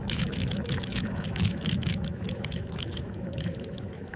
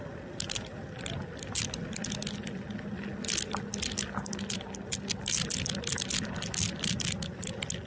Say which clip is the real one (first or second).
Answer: second